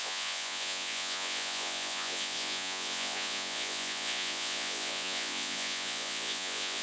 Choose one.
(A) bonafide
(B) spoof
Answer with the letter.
B